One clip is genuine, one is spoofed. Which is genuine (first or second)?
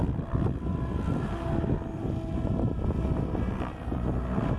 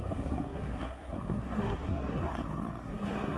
first